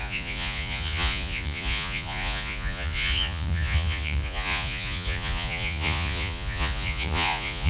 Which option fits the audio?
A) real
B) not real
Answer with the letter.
B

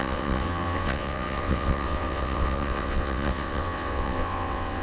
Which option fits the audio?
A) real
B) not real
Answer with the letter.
B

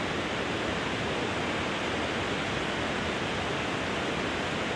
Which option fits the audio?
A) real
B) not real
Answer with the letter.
A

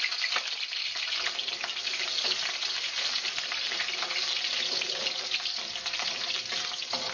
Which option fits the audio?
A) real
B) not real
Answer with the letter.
A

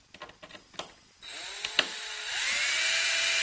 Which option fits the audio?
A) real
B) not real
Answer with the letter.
A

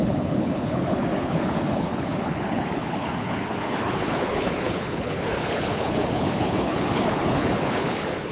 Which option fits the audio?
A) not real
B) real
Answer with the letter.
A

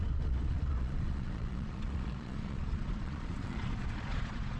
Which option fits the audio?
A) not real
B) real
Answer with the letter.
A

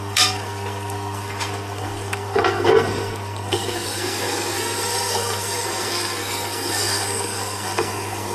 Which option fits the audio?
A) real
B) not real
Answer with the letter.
B